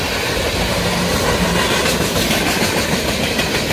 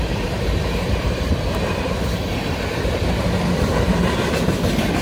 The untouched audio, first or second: first